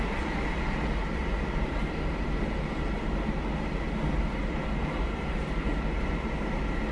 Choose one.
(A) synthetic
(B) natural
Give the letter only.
B